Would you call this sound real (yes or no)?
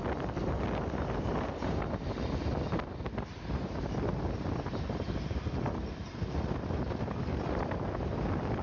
yes